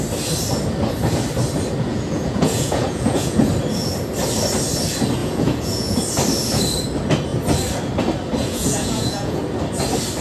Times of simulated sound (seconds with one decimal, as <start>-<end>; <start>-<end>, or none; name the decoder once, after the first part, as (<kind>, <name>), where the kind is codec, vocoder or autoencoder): 1.9-3.5 (vocoder, Vocos); 5.2-6.0; 8.4-9.4